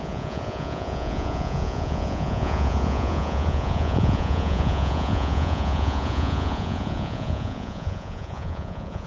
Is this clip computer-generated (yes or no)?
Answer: yes